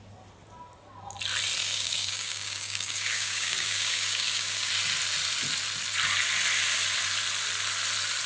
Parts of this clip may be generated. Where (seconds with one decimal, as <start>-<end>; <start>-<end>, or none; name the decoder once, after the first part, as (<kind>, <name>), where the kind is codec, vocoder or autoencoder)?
1.6-4.7 (codec, DAC)